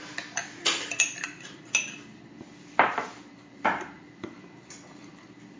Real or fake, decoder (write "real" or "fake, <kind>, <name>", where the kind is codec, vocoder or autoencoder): real